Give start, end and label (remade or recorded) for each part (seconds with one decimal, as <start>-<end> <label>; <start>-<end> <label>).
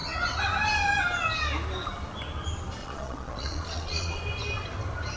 0.0-2.8 recorded; 2.8-4.2 remade; 4.2-5.2 recorded